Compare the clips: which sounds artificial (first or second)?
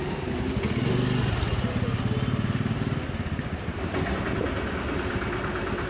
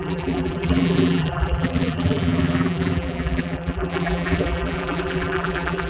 second